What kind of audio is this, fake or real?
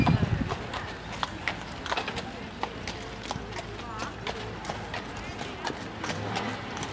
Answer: real